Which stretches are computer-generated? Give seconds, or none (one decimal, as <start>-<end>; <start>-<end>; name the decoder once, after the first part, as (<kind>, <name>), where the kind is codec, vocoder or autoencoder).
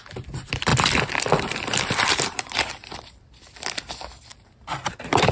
0.7-3.9 (vocoder, BigVGAN v2)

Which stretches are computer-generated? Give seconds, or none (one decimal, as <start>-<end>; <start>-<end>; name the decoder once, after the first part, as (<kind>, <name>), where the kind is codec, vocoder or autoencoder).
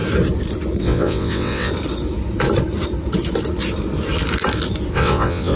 0.8-1.7 (vocoder, WaveNeXt); 4.9-5.6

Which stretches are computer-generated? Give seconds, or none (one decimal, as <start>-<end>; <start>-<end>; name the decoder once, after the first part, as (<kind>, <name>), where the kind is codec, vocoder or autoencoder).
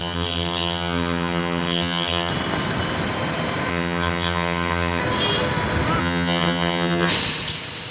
0.0-2.3 (vocoder, HiFi-GAN); 3.7-5.0; 6.0-7.1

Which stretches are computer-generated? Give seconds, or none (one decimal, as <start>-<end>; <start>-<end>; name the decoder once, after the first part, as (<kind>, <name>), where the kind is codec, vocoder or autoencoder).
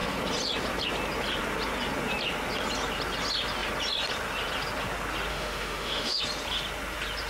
5.3-6.2 (autoencoder, DAC-VAE)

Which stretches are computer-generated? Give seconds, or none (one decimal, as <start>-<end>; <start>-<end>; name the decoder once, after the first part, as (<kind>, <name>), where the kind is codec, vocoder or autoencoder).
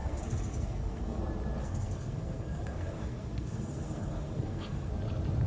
0.0-1.2 (codec, SNAC); 1.6-4.9